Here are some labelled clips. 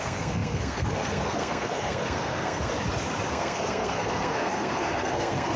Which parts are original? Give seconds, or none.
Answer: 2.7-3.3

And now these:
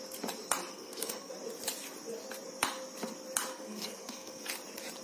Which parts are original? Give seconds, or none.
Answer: 0.0-0.7; 1.3-3.5; 4.4-5.0

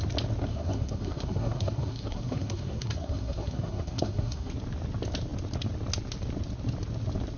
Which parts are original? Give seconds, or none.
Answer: 0.0-0.5; 4.5-7.4

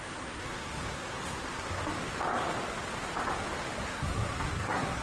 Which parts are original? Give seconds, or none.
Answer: 1.8-3.8